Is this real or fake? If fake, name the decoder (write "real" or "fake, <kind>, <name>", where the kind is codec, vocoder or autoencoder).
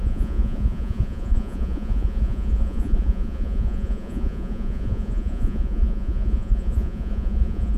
fake, vocoder, Vocos